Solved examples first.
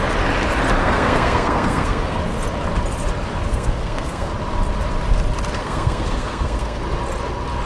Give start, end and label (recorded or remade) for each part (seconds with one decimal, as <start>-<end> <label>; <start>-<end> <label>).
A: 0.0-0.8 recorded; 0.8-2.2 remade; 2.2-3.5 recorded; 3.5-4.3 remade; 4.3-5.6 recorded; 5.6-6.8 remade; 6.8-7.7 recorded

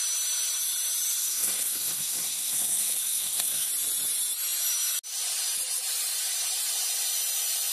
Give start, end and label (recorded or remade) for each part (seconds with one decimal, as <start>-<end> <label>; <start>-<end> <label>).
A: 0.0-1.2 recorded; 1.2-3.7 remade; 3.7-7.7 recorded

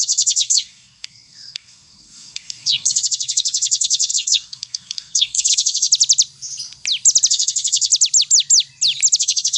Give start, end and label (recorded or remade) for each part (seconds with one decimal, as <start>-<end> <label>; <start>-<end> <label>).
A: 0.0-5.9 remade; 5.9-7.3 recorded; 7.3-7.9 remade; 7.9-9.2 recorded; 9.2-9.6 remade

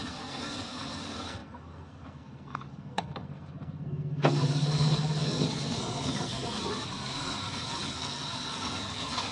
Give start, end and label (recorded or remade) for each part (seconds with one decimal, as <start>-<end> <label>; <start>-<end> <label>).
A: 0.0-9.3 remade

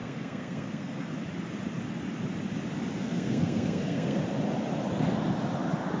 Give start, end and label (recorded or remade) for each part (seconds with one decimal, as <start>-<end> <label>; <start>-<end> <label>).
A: 0.0-1.1 remade; 1.1-3.0 recorded; 3.0-4.2 remade; 4.2-6.0 recorded

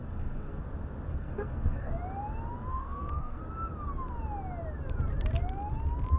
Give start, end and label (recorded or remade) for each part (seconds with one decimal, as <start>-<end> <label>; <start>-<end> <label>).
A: 0.0-0.6 remade; 0.6-1.1 recorded; 1.1-1.9 remade; 1.9-2.7 recorded; 2.7-3.4 remade; 3.4-6.2 recorded

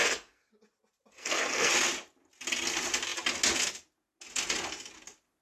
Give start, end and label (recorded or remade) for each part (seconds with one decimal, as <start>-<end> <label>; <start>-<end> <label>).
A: 0.0-0.5 remade; 0.5-1.1 recorded; 1.1-1.7 remade; 1.7-5.4 recorded

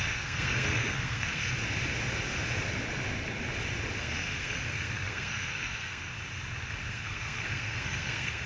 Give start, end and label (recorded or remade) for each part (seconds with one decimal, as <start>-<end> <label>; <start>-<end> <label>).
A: 0.0-1.4 remade; 1.4-4.0 recorded; 4.0-6.1 remade; 6.1-6.8 recorded; 6.8-8.5 remade